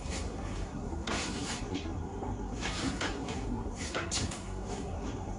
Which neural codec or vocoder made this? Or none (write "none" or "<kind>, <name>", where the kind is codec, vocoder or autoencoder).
codec, SNAC